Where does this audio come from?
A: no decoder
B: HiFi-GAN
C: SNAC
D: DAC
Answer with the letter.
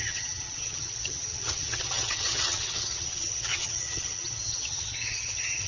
B